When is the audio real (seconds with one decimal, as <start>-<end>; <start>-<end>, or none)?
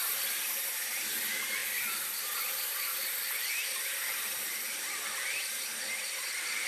0.0-6.7